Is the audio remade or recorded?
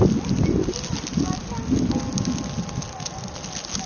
recorded